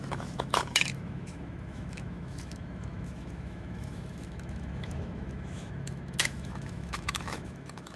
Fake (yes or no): yes